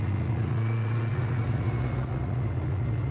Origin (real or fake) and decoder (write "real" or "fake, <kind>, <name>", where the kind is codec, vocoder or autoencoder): fake, vocoder, Vocos